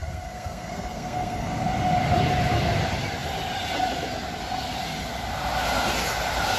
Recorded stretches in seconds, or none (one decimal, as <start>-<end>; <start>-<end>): 1.6-6.6